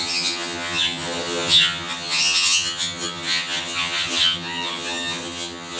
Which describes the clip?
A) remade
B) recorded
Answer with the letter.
A